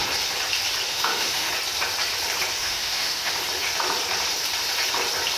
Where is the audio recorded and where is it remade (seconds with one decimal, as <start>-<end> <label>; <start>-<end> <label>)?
0.0-0.9 recorded; 0.9-1.5 remade; 1.5-2.6 recorded; 2.6-3.3 remade; 3.3-5.4 recorded